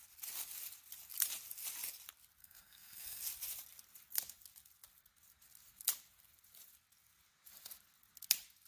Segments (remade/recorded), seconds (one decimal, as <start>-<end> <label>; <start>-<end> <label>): 0.0-2.4 recorded; 2.4-3.2 remade; 3.2-8.7 recorded